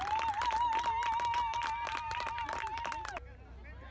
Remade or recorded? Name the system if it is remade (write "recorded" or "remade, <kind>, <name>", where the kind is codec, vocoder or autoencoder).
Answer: recorded